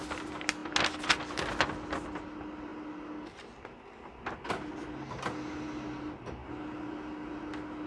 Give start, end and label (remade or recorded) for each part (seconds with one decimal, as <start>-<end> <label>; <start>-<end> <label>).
0.0-7.9 recorded